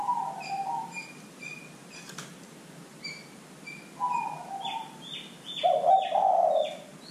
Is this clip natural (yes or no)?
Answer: yes